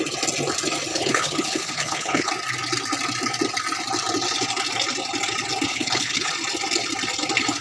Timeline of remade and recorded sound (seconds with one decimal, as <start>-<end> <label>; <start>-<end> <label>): 0.0-0.9 recorded; 0.9-2.3 remade; 2.3-5.7 recorded; 5.7-6.3 remade; 6.3-7.6 recorded